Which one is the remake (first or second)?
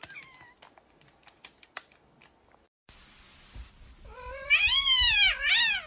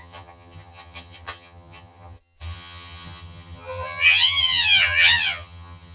second